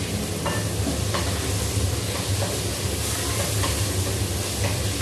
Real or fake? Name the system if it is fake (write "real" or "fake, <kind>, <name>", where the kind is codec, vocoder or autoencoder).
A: real